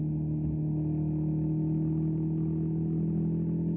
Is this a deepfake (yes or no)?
no